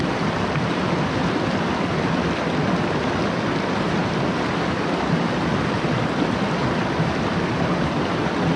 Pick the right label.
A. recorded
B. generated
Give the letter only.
A